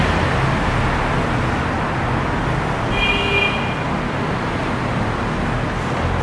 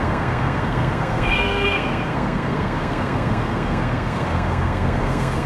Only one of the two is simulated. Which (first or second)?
second